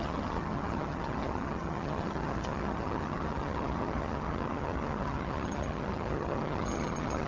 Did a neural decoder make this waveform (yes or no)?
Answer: yes